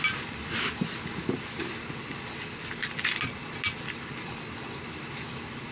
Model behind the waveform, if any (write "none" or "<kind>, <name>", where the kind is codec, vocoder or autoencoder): none